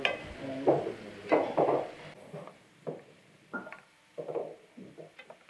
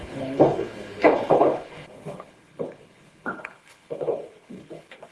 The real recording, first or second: first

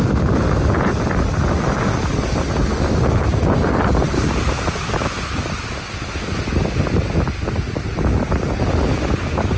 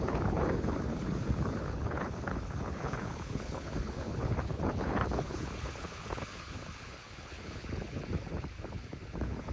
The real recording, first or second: first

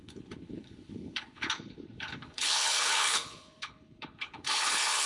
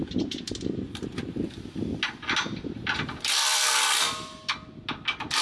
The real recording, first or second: second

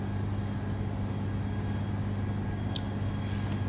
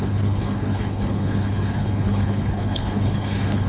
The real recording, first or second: first